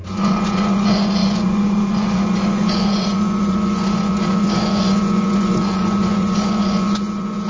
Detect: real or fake fake